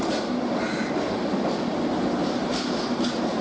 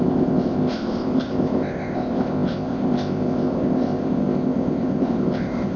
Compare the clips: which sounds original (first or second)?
first